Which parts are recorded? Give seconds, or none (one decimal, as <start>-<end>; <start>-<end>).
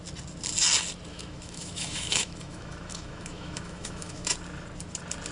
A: 0.0-1.1; 4.3-5.3